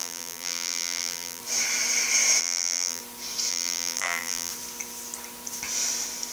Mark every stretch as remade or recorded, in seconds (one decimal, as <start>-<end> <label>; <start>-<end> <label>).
0.0-1.4 remade; 1.4-2.4 recorded; 2.4-3.0 remade; 3.0-3.5 recorded; 3.5-4.5 remade; 4.5-6.3 recorded